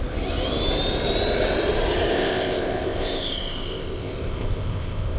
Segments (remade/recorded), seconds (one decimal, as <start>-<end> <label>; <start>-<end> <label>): 0.0-2.1 recorded; 2.1-5.2 remade